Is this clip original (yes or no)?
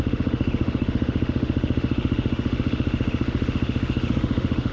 no